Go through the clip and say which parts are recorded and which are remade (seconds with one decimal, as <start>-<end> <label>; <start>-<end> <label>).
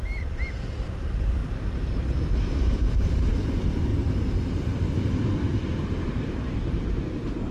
0.0-1.4 remade; 1.4-2.3 recorded; 2.3-3.9 remade; 3.9-6.0 recorded; 6.0-7.5 remade